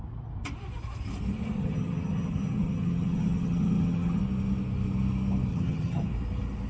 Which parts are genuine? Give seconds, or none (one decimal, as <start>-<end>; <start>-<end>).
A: 0.0-1.6; 4.2-5.5; 6.1-6.7